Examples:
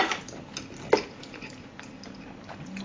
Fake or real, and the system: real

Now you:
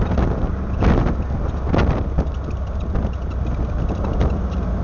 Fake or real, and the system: real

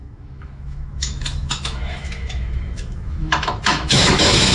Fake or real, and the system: fake, autoencoder, DAC-VAE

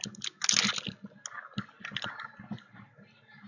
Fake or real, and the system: real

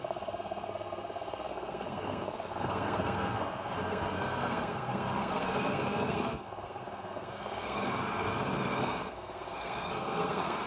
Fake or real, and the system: fake, codec, SNAC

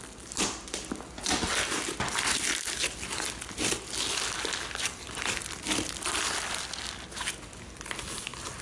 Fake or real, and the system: real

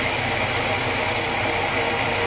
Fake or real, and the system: real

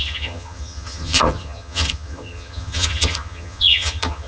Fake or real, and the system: fake, vocoder, HiFi-GAN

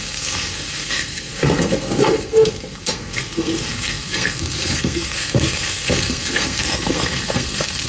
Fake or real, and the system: fake, codec, SNAC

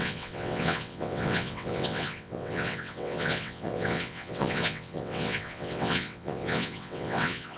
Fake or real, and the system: fake, vocoder, WaveNeXt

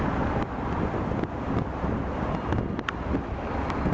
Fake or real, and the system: real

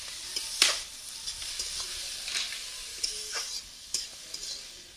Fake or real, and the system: fake, vocoder, BigVGAN v2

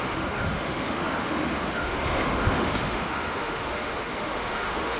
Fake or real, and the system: fake, autoencoder, DAC-VAE